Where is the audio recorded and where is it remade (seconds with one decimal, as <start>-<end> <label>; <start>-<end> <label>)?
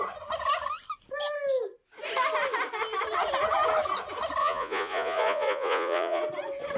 0.0-4.4 recorded; 4.4-6.2 remade; 6.2-6.8 recorded